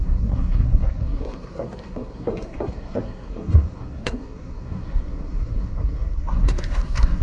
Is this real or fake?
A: fake